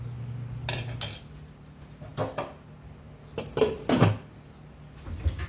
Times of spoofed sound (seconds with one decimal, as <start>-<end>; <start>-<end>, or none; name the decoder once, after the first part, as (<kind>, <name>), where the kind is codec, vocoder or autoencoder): none